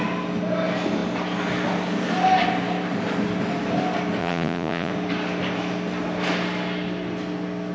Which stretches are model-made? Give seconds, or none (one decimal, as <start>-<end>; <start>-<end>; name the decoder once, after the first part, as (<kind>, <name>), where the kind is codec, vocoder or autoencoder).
4.2-4.9 (vocoder, Vocos)